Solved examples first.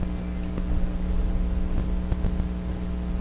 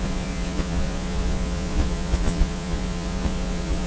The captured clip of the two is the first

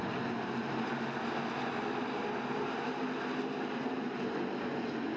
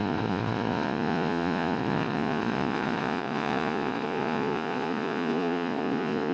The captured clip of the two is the first